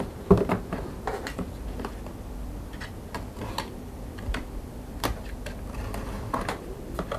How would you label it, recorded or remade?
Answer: remade